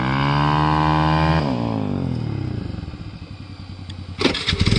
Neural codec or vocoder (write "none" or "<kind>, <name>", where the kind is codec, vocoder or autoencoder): none